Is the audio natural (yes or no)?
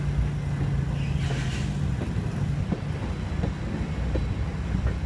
yes